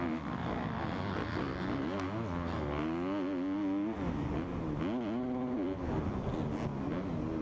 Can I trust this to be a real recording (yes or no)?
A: yes